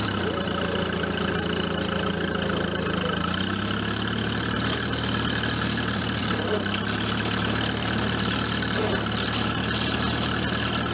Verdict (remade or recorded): recorded